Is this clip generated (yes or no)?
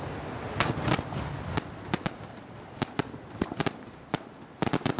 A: no